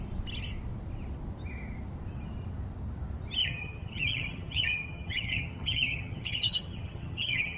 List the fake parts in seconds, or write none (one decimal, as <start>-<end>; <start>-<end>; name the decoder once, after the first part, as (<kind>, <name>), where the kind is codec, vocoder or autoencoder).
3.4-7.6 (vocoder, HiFi-GAN)